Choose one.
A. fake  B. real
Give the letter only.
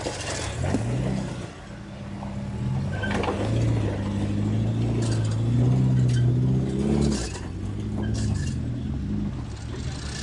B